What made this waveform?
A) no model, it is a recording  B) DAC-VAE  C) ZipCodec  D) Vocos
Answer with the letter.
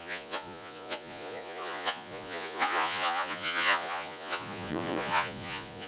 D